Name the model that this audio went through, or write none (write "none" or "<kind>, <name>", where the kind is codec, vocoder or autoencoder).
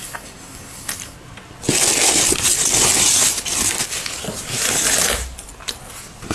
vocoder, BigVGAN v2